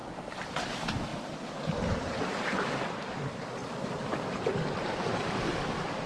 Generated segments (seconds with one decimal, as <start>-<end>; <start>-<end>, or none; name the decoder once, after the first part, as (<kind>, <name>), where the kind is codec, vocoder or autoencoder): 0.0-0.6 (vocoder, BigVGAN v2); 1.1-2.2